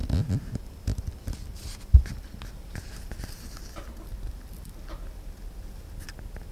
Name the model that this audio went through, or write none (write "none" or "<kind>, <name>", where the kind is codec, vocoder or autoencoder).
none